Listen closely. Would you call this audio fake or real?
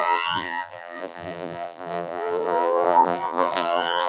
fake